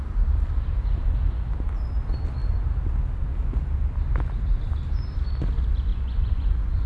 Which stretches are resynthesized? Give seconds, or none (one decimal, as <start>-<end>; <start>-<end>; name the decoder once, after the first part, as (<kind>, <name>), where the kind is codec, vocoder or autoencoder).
5.9-6.9 (vocoder, Vocos)